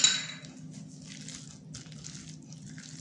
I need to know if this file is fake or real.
real